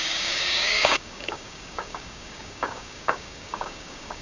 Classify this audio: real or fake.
fake